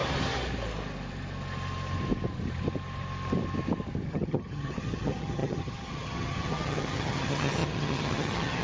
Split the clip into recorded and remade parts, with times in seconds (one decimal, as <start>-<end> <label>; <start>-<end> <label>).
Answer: 0.0-4.1 recorded; 4.1-8.6 remade